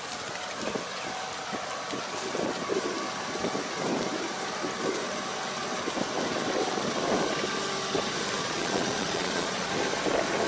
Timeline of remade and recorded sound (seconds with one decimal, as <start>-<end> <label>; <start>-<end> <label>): 0.0-8.4 recorded; 8.4-9.7 remade; 9.7-10.5 recorded